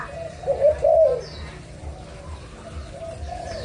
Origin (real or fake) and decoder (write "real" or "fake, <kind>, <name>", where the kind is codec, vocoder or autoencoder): real